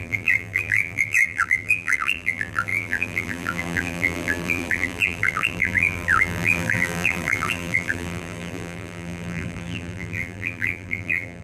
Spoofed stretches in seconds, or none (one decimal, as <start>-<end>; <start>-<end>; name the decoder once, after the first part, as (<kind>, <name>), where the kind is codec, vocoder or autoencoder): 0.0-11.4 (vocoder, BigVGAN v2)